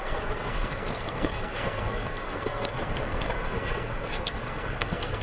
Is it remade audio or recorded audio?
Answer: remade